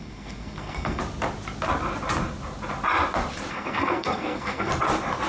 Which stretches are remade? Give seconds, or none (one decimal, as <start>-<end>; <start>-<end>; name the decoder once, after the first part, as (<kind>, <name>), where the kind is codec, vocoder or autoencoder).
0.0-1.0 (codec, SNAC); 3.5-4.7